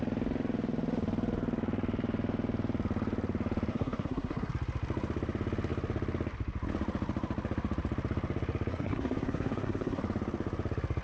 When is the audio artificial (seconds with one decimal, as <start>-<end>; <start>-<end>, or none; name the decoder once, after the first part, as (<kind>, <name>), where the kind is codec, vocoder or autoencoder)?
3.7-4.5 (codec, SNAC); 8.7-10.0